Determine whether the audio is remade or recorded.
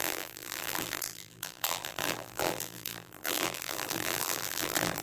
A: remade